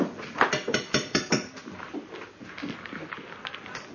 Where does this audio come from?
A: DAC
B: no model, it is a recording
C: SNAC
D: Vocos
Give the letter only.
B